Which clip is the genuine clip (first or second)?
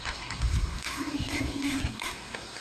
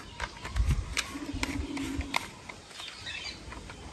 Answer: second